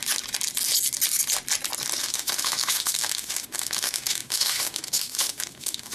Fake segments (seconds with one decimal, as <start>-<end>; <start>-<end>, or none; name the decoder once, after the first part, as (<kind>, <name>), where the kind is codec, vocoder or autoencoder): 2.0-5.9 (autoencoder, DAC-VAE)